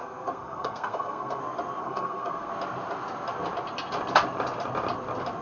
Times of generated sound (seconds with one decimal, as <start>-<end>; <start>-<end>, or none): 0.0-1.4; 1.8-2.5